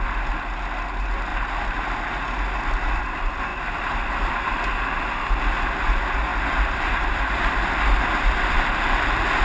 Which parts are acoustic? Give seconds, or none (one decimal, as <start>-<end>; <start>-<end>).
0.0-3.5; 4.3-6.3